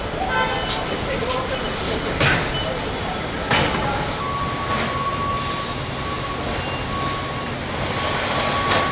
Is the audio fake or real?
real